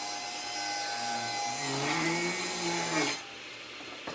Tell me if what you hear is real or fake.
real